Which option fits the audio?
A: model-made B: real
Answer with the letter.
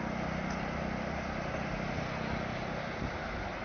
B